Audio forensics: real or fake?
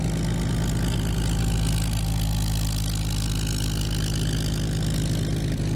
real